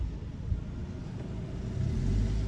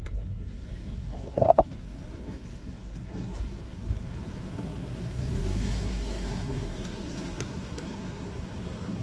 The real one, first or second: first